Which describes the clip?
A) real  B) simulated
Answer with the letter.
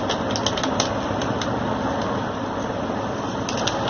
A